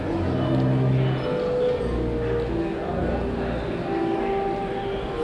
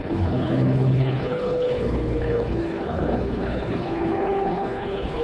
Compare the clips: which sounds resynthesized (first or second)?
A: second